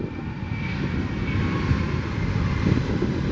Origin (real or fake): real